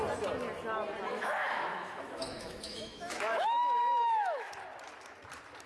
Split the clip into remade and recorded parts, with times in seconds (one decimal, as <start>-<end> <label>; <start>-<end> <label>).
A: 0.0-1.1 recorded; 1.1-4.5 remade; 4.5-5.7 recorded